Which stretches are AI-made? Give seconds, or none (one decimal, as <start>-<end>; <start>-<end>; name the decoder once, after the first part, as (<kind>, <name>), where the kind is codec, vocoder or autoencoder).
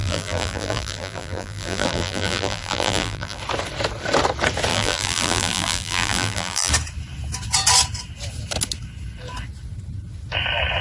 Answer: 0.0-3.4 (vocoder, BigVGAN v2); 4.7-6.7